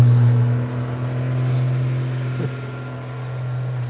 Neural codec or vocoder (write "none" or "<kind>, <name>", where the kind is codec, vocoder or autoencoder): none